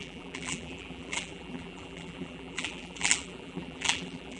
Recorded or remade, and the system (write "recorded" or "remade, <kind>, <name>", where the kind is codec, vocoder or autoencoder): remade, vocoder, BigVGAN v2